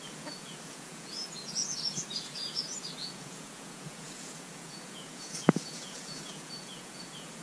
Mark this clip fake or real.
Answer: fake